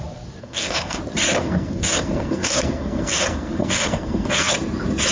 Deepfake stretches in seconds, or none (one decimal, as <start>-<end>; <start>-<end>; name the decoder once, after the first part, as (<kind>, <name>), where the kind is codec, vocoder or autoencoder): 0.4-1.0 (codec, SNAC); 1.4-4.5